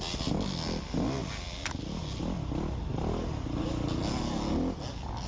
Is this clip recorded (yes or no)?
yes